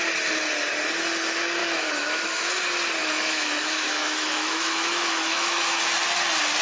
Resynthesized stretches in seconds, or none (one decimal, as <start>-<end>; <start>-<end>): 1.6-2.5; 3.0-5.8